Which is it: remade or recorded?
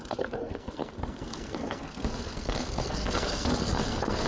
remade